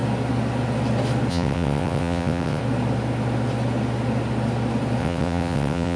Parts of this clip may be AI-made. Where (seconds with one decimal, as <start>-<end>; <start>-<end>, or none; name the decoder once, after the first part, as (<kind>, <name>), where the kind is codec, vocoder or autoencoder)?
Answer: 1.3-2.6 (vocoder, WaveNeXt); 5.0-6.0